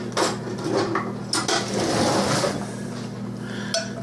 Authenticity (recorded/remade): recorded